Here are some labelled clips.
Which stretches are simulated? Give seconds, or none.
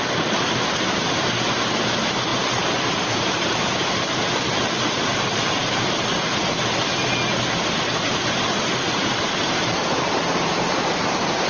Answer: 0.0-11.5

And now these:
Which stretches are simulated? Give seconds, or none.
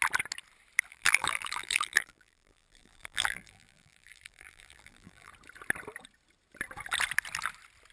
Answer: 0.9-5.3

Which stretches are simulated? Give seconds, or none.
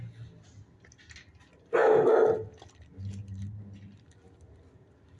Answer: none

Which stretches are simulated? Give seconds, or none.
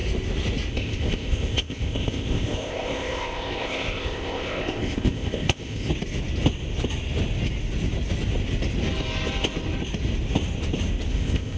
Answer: 0.7-5.9; 11.1-11.6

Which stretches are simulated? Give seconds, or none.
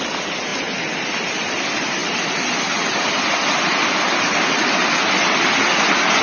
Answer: none